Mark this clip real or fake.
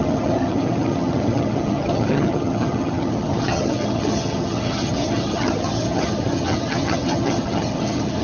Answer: fake